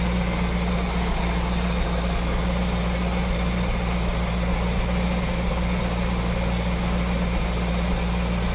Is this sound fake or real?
real